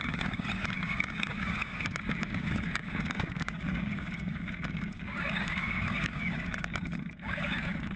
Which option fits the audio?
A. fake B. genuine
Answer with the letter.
A